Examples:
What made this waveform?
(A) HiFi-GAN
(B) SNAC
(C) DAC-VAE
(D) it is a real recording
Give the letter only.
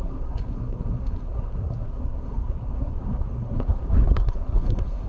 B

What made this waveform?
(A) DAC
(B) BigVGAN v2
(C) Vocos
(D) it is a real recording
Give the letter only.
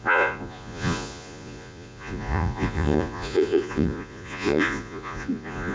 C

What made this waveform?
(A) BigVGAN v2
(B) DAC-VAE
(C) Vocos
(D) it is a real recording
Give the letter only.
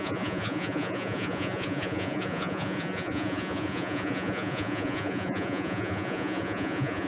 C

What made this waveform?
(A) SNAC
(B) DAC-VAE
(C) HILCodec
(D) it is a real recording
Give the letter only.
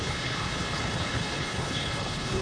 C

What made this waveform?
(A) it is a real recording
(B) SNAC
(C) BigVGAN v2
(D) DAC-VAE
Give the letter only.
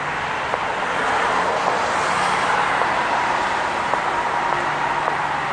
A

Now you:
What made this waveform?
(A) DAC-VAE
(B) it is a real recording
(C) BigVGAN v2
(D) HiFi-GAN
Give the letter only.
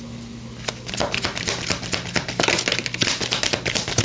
B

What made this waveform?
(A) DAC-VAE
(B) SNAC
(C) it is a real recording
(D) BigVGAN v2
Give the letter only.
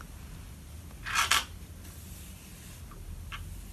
C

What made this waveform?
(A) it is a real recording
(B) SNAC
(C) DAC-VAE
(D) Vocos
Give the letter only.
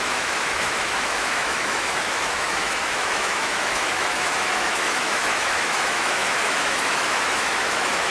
C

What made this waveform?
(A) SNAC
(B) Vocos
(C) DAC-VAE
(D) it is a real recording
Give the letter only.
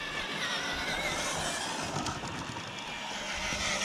D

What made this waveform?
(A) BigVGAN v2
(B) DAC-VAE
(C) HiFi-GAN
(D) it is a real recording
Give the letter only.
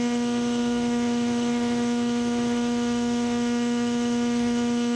B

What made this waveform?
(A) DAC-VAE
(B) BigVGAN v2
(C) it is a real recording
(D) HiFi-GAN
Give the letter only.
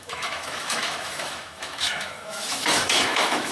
A